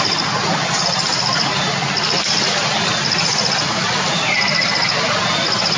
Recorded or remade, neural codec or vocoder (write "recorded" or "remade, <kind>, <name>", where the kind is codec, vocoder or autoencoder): recorded